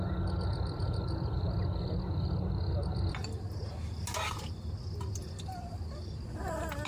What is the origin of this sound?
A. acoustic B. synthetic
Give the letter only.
A